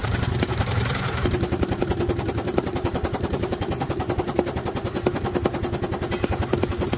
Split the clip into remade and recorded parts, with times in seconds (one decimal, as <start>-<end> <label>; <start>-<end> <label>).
0.0-4.2 remade; 4.2-7.0 recorded